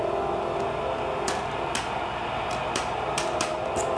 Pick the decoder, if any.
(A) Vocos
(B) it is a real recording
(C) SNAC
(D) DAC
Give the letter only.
B